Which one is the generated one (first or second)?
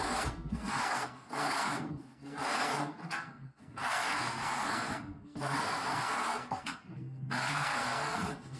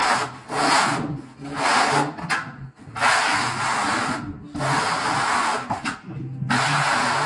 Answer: first